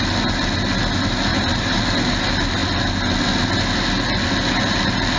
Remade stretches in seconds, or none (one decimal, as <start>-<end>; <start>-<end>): 1.3-1.8